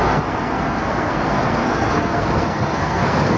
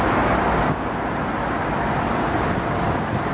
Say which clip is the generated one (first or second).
first